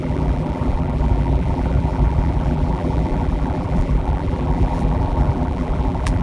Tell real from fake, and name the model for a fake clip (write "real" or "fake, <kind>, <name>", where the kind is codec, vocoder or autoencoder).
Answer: fake, vocoder, BigVGAN v2